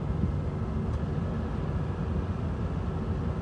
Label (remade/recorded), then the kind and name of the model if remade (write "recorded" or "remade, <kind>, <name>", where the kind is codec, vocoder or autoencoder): recorded